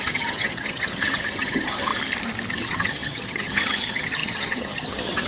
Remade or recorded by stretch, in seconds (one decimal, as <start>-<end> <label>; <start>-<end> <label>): 0.0-1.9 remade; 1.9-2.5 recorded; 2.5-5.3 remade